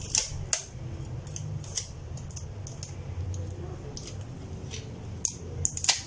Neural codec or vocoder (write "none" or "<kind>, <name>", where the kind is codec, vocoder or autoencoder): none